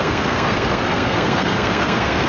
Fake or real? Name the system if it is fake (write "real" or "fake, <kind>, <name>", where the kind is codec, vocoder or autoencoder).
fake, codec, SNAC